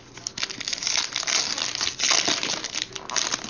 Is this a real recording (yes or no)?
yes